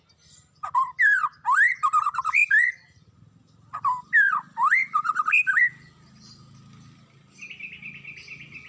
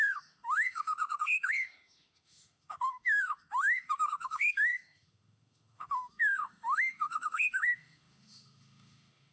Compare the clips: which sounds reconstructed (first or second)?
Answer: second